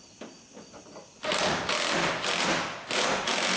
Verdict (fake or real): real